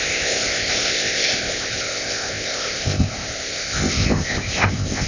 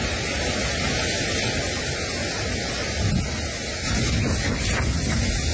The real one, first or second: second